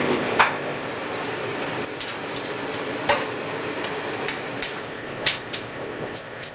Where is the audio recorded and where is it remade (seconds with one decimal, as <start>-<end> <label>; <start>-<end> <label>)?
0.0-0.9 remade; 0.9-4.8 recorded; 4.8-6.5 remade